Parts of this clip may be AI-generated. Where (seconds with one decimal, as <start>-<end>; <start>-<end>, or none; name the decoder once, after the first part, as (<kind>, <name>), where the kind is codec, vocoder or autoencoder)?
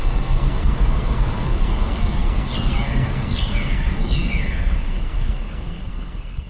0.0-6.5 (codec, SNAC)